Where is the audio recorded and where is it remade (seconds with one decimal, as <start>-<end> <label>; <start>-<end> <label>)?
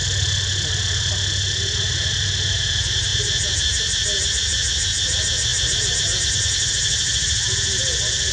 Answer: 0.0-2.1 remade; 2.1-8.3 recorded